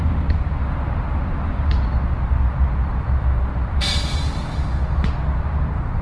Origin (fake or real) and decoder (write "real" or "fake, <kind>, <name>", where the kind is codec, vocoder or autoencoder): real